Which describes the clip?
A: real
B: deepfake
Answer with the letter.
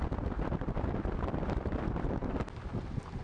A